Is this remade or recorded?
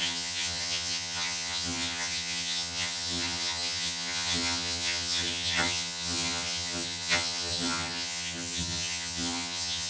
remade